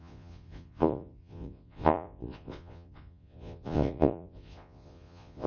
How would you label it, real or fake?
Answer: fake